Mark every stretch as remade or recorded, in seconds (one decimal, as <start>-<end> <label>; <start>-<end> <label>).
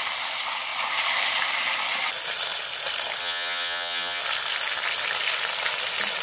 0.0-3.2 recorded; 3.2-4.2 remade; 4.2-6.2 recorded